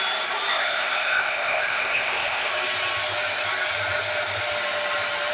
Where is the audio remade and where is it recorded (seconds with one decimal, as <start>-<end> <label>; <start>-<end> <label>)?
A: 0.0-0.5 recorded; 0.5-2.5 remade; 2.5-5.3 recorded